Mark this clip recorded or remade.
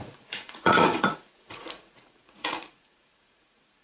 remade